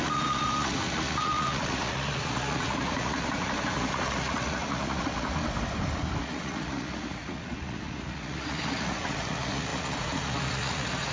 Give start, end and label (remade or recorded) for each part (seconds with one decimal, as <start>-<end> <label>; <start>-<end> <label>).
0.0-5.4 remade; 5.4-6.2 recorded; 6.2-11.1 remade